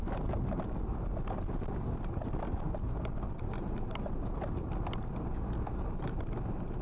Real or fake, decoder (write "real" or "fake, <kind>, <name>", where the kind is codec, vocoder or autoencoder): real